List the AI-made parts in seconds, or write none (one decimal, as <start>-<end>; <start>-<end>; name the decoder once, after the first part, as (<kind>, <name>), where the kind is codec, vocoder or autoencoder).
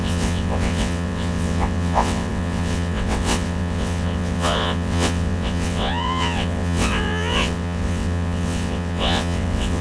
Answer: 0.0-9.8 (vocoder, WaveNeXt)